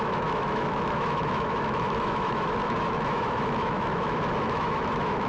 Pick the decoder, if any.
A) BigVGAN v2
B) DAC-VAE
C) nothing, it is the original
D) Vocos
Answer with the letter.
B